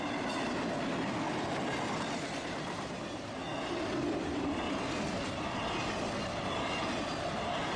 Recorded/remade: recorded